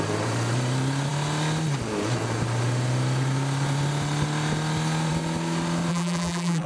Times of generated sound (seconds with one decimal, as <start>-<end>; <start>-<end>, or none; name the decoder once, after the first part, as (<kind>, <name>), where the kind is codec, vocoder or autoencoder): 5.9-6.7 (vocoder, BigVGAN v2)